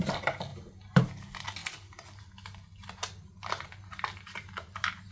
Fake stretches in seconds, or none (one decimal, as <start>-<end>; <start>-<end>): none